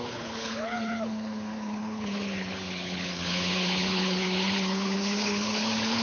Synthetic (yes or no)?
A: yes